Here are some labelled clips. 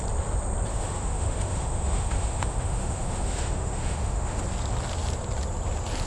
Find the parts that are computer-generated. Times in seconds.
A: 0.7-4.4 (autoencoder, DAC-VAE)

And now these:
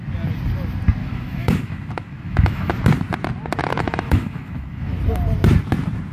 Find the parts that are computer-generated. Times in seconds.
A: 1.0-2.7 (autoencoder, DAC-VAE); 3.7-5.0

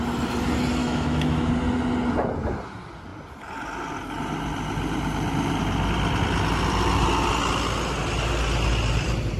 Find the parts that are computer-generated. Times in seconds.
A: 0.8-1.5 (autoencoder, DAC-VAE)

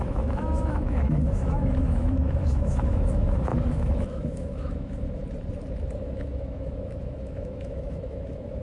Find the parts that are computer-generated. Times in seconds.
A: 0.0-5.2 (autoencoder, DAC-VAE); 6.0-8.6

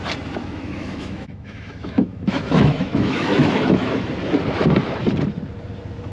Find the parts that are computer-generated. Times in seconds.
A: 0.4-4.1 (autoencoder, DAC-VAE)

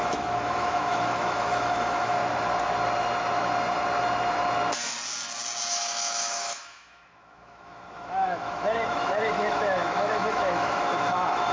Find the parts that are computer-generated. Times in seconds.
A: 0.0-2.2 (autoencoder, DAC-VAE); 5.7-11.5

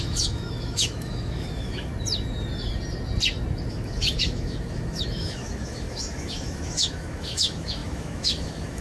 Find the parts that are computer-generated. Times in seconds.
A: 0.0-1.9 (autoencoder, DAC-VAE); 3.7-8.8